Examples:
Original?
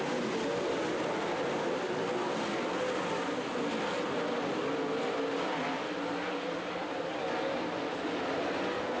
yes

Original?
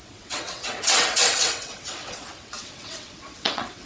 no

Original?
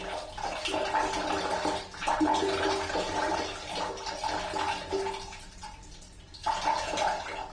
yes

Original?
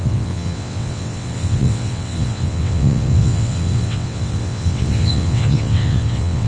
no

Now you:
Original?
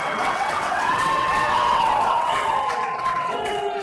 no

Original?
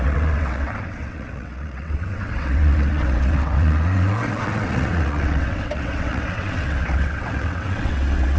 no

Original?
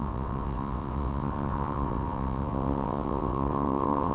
no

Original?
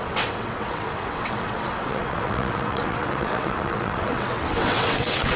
no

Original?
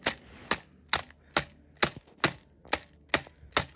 yes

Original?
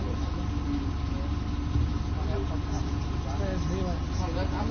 yes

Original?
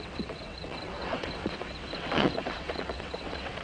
no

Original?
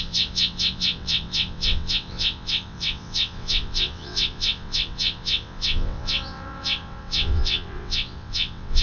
no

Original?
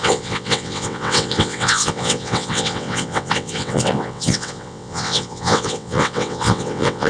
no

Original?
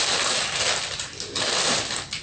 yes